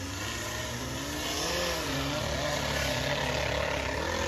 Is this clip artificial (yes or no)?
no